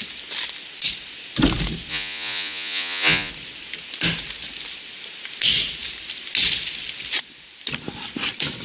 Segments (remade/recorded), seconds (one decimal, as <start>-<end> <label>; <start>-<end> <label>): 0.0-1.9 recorded; 1.9-3.3 remade; 3.3-8.6 recorded